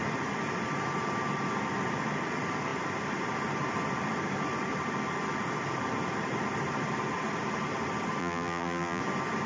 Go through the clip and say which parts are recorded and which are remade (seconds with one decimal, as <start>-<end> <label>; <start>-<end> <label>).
0.0-8.2 recorded; 8.2-9.0 remade; 9.0-9.5 recorded